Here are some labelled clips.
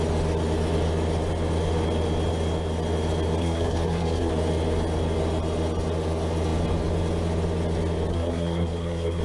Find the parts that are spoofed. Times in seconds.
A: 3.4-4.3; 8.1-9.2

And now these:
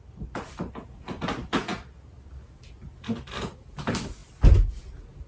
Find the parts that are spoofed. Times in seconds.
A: none

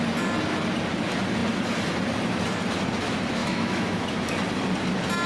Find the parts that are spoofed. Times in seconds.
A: 3.4-4.1

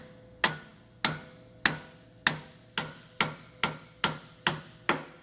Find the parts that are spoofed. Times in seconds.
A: none

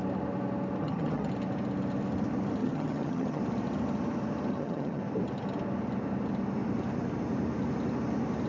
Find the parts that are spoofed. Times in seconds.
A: 0.8-1.3; 2.6-3.4; 4.5-5.0